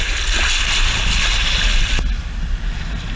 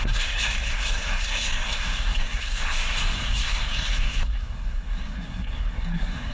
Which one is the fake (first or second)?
second